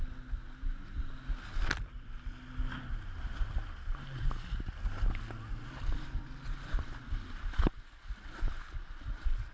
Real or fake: real